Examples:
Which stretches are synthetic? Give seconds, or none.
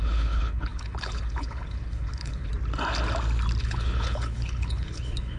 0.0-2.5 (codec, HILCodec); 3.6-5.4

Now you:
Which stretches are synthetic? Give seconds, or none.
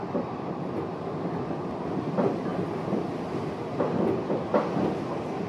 none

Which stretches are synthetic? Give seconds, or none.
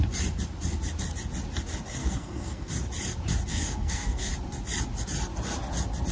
2.0-2.7 (codec, SNAC); 3.5-4.3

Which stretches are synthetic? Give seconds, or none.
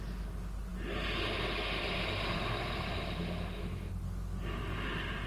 none